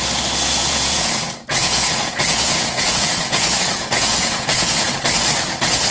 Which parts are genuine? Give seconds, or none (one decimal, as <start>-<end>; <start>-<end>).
0.0-0.6; 1.2-1.6; 4.9-5.9

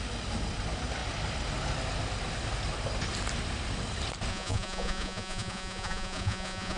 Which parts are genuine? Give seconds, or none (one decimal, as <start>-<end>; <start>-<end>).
0.0-4.3

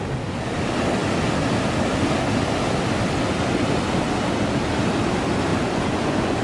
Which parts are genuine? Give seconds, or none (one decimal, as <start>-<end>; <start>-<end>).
0.0-5.5